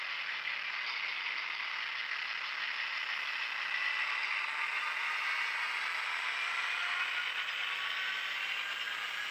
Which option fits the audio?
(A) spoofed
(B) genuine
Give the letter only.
B